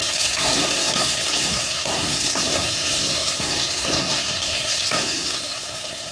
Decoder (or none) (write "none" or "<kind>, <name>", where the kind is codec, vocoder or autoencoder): codec, SNAC